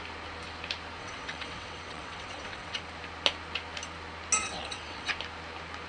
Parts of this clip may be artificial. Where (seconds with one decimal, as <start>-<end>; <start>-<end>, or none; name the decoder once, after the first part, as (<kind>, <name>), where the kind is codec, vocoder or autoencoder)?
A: 1.0-2.8 (vocoder, WaveNeXt); 4.4-5.1